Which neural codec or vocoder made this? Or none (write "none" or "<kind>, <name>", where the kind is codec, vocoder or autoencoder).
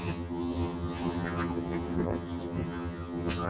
vocoder, HiFi-GAN